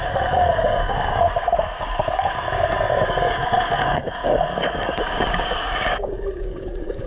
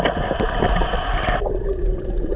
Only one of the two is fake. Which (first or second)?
first